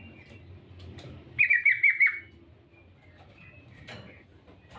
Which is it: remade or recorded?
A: recorded